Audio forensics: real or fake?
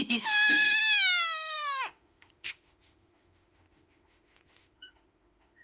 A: fake